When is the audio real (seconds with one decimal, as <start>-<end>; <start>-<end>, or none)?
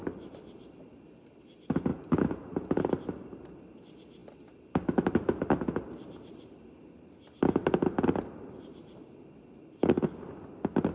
0.0-1.9; 2.9-10.9